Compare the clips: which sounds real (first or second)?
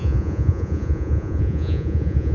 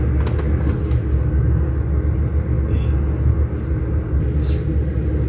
second